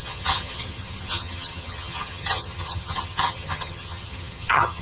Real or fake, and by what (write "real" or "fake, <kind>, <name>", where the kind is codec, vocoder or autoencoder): fake, vocoder, HiFi-GAN